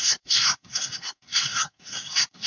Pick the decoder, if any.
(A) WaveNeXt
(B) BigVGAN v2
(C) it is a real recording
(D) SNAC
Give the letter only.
D